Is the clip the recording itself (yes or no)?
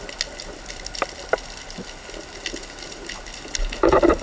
yes